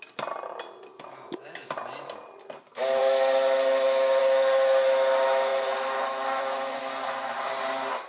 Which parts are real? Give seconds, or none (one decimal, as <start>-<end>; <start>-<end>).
0.0-5.5; 6.8-8.1